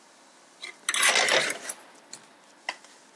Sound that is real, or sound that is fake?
real